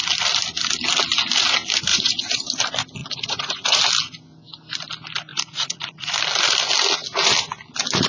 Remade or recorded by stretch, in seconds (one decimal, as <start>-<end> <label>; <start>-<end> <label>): 0.0-1.9 recorded; 1.9-2.5 remade; 2.5-3.0 recorded; 3.0-3.8 remade; 3.8-5.3 recorded; 5.3-6.1 remade; 6.1-8.1 recorded